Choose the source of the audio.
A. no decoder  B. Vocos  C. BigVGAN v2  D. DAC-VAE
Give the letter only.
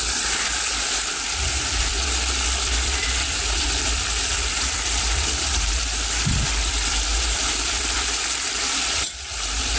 C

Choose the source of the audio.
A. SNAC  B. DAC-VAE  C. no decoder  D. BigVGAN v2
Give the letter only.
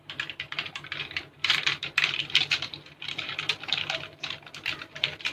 D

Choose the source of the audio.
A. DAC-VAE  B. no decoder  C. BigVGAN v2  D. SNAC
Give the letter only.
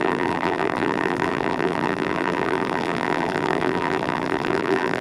C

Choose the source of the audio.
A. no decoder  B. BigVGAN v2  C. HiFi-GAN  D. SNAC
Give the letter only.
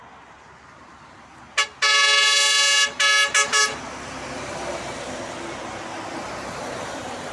A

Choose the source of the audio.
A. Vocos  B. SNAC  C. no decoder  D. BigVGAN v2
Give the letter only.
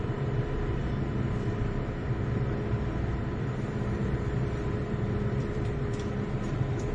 D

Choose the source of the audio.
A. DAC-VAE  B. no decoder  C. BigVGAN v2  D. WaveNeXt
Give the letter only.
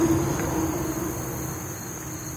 B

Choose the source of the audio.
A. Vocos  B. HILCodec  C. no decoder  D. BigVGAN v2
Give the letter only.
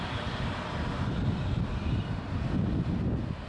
C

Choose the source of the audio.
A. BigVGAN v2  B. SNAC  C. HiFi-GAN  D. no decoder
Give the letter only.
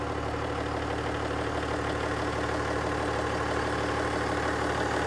D